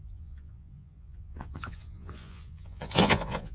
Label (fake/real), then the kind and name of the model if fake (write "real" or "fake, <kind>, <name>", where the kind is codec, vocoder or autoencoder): fake, vocoder, Vocos